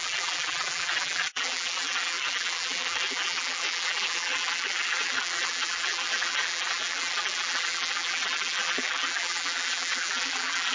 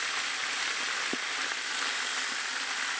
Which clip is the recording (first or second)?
second